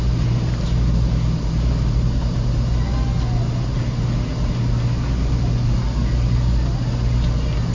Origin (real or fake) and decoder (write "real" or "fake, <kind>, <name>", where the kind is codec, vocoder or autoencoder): real